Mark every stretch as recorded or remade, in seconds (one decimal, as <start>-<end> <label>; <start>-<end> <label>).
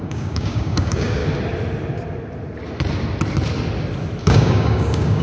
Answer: 0.0-1.2 remade; 1.2-4.2 recorded; 4.2-5.2 remade